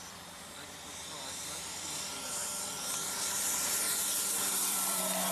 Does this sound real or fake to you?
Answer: fake